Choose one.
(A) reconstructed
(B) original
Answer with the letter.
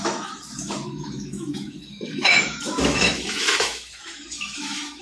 A